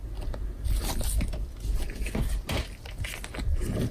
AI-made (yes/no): no